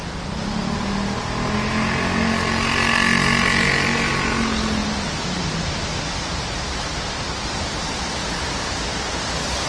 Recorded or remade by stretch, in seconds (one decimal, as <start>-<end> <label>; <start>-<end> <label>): 0.0-4.8 recorded; 4.8-5.8 remade; 5.8-9.7 recorded

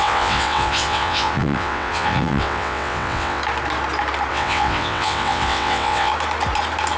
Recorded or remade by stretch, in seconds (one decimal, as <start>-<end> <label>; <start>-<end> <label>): 0.0-3.4 remade; 3.4-4.3 recorded; 4.3-6.1 remade; 6.1-7.0 recorded

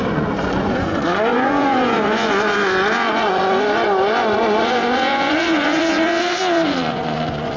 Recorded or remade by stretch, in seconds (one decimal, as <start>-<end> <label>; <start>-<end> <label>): 0.0-7.6 remade

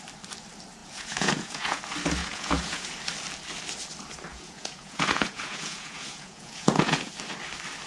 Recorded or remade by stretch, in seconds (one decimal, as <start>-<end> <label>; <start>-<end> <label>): 0.0-0.8 recorded; 0.8-1.8 remade; 1.8-2.2 recorded; 2.2-2.9 remade; 2.9-4.3 recorded; 4.3-7.1 remade; 7.1-7.9 recorded

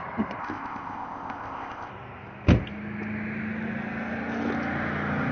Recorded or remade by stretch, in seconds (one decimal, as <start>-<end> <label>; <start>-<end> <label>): 0.0-0.4 recorded; 0.4-1.9 remade; 1.9-5.3 recorded

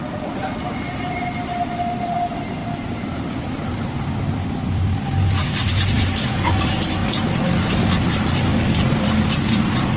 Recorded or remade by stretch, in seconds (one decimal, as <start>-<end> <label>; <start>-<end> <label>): 0.0-2.6 recorded; 2.6-3.9 remade; 3.9-5.4 recorded; 5.4-6.5 remade; 6.5-10.0 recorded